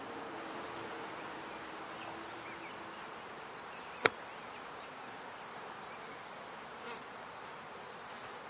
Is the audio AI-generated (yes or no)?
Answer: no